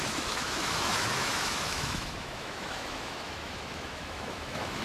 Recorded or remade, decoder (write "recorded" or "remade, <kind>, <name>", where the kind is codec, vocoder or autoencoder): remade, autoencoder, DAC-VAE